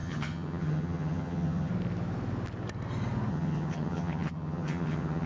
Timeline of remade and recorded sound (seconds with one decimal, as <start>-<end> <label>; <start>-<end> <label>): 0.0-1.7 remade; 1.7-3.3 recorded; 3.3-5.3 remade